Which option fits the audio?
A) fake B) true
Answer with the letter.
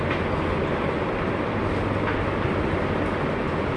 B